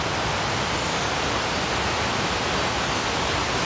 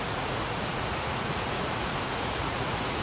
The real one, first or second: first